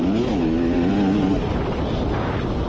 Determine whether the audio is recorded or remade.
recorded